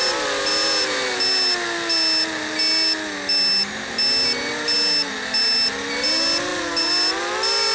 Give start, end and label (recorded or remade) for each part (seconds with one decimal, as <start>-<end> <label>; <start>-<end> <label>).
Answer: 0.0-7.7 recorded